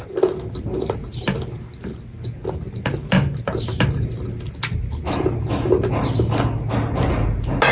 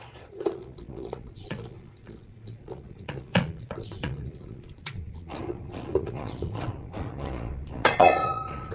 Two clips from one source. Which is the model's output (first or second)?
second